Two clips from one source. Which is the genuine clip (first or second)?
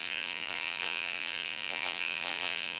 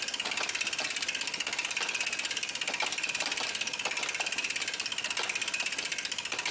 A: second